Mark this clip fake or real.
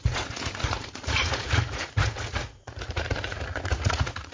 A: fake